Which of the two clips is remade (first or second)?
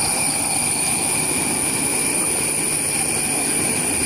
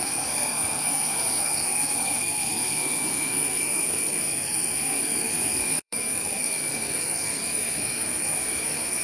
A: second